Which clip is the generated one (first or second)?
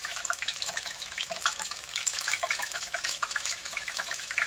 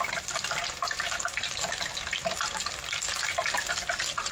first